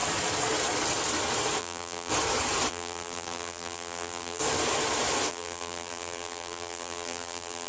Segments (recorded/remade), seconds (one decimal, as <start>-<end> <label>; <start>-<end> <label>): 0.0-1.6 recorded; 1.6-2.1 remade; 2.1-2.7 recorded; 2.7-4.4 remade; 4.4-5.3 recorded; 5.3-7.7 remade